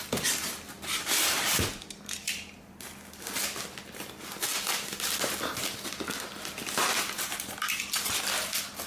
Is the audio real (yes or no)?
yes